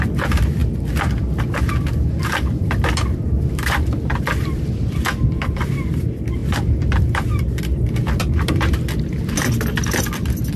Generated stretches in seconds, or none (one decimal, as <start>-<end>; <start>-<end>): 0.0-10.6